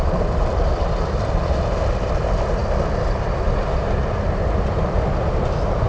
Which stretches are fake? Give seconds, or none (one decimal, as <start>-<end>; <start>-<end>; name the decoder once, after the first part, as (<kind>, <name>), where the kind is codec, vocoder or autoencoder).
none